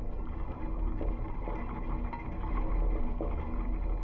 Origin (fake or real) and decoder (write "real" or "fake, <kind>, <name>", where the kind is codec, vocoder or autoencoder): real